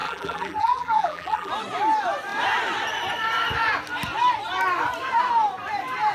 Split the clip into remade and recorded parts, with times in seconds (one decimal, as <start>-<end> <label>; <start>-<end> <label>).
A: 0.0-1.5 remade; 1.5-6.1 recorded